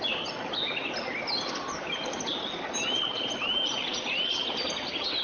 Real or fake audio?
real